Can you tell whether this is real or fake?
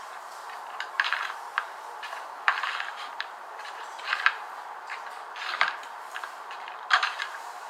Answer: fake